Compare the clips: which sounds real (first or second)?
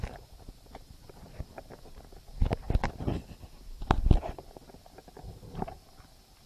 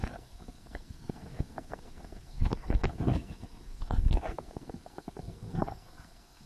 first